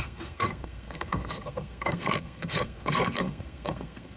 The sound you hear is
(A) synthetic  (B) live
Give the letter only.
A